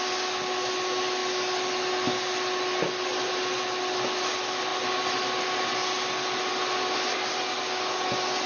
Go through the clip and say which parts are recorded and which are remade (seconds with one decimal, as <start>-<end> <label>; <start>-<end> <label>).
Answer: 0.0-8.5 recorded